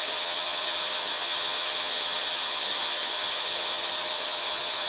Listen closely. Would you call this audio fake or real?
fake